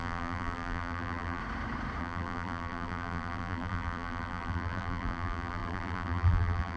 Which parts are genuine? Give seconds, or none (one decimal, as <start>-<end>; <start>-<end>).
1.4-2.0

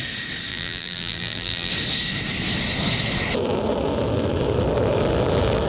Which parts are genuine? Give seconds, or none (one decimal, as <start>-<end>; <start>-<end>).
0.0-0.5; 1.7-5.7

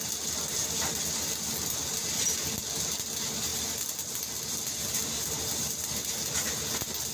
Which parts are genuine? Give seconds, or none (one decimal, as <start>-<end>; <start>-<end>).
0.0-7.1

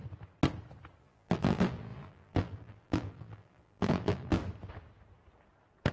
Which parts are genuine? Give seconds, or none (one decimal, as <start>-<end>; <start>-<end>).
0.0-1.0; 4.4-5.9